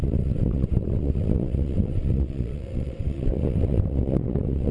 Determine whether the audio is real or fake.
fake